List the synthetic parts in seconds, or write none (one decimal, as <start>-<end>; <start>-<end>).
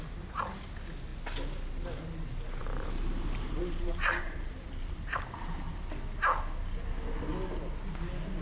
2.6-5.8